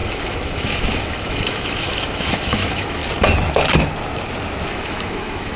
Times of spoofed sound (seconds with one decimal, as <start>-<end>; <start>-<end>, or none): 0.0-3.0; 4.7-5.6